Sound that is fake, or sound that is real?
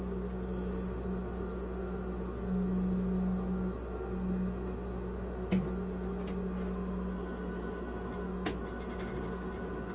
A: real